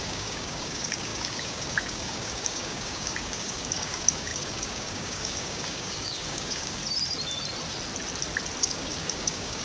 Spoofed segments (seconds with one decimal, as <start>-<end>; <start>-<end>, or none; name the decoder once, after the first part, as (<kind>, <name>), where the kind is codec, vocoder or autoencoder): 0.0-6.8 (codec, DAC); 8.6-9.6